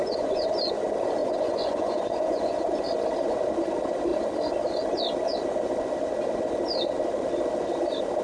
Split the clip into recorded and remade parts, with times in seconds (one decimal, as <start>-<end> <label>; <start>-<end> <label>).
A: 0.0-0.7 remade; 0.7-1.2 recorded; 1.2-2.8 remade; 2.8-8.2 recorded